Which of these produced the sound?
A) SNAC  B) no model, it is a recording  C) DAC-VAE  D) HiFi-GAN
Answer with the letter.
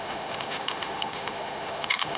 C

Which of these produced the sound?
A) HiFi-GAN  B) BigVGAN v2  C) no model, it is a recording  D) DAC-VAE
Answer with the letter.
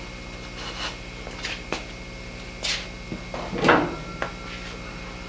C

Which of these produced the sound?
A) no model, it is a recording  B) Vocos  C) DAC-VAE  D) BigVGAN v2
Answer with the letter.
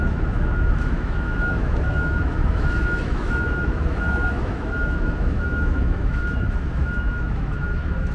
C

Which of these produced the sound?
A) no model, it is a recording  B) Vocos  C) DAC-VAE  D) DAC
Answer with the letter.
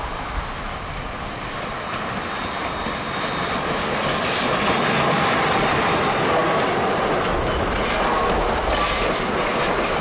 A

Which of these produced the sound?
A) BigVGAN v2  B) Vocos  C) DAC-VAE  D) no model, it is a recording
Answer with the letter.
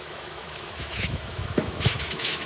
C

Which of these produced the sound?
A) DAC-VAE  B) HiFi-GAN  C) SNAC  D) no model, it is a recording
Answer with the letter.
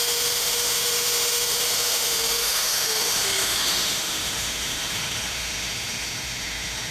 A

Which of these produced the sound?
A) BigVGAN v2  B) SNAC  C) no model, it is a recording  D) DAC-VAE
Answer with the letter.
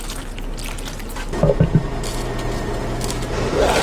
C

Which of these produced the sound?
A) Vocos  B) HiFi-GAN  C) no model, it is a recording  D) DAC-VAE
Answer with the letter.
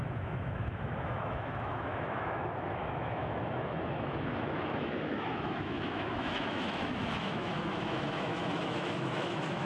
D